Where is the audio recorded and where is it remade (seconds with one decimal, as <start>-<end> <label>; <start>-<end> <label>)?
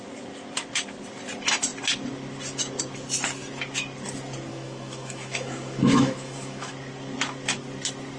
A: 0.0-4.5 recorded; 4.5-6.7 remade; 6.7-8.2 recorded